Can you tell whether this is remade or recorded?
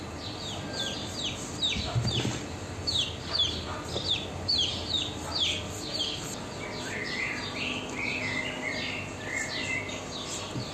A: recorded